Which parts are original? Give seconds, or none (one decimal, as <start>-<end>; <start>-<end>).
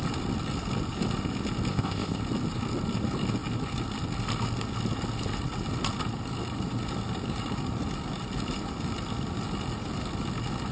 0.0-1.7; 2.2-10.7